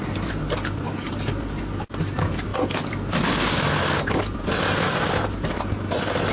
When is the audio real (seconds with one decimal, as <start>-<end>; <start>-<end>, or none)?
0.0-6.3